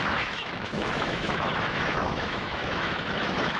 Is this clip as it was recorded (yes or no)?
no